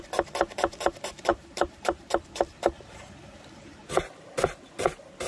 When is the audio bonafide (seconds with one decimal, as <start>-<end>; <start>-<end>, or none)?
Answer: 0.0-1.3; 2.1-5.3